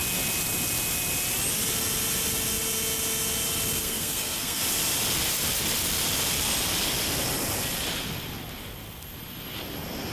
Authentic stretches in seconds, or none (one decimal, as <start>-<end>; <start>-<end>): 0.0-3.8; 4.6-10.1